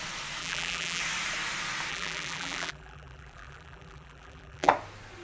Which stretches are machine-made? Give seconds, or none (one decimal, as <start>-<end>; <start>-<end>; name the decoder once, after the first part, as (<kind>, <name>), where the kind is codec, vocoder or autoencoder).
0.4-1.0 (vocoder, BigVGAN v2); 1.9-4.7